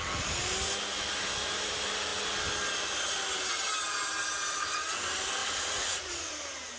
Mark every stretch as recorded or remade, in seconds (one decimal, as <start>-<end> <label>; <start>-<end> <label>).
0.0-5.4 recorded; 5.4-6.3 remade; 6.3-6.8 recorded